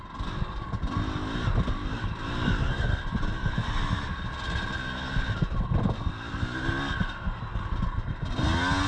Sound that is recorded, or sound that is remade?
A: recorded